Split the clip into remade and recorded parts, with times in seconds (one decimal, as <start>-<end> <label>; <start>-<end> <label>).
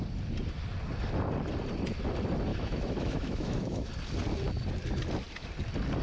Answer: 0.0-2.5 recorded; 2.5-3.9 remade; 3.9-6.0 recorded